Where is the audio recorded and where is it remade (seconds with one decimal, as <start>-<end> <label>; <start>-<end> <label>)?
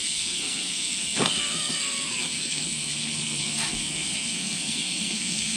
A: 0.0-5.6 remade